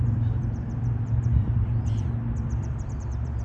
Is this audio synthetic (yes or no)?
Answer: yes